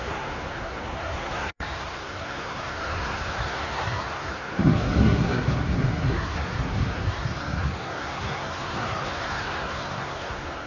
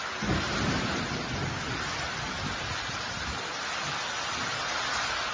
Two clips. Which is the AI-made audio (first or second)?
first